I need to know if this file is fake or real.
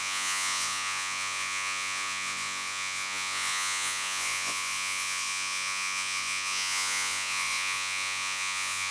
fake